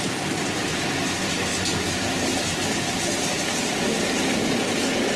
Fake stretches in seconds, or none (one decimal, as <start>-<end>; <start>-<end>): 1.5-3.4